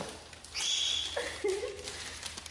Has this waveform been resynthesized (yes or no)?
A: no